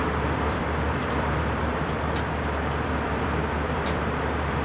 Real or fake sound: fake